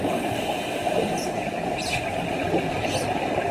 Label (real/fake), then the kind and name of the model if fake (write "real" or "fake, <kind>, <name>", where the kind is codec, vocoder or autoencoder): fake, vocoder, BigVGAN v2